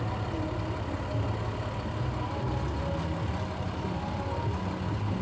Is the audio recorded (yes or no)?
yes